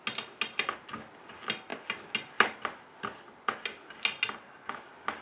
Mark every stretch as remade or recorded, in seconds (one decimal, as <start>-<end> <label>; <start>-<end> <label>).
0.0-5.2 recorded